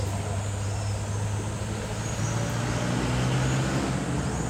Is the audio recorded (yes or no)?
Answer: yes